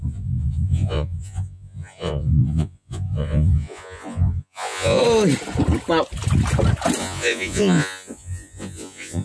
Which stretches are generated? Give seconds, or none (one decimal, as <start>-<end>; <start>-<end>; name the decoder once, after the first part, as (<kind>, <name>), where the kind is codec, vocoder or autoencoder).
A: 0.0-5.0 (vocoder, Vocos); 7.0-9.2